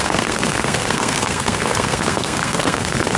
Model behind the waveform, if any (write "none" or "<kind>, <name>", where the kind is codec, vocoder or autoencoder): codec, SNAC